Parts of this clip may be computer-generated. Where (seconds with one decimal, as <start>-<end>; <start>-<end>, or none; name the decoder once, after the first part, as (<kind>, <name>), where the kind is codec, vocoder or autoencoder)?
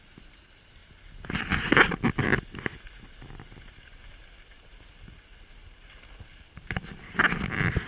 none